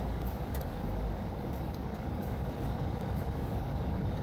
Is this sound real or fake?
fake